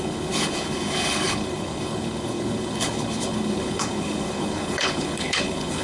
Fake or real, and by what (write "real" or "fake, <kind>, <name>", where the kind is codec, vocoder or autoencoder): fake, codec, HILCodec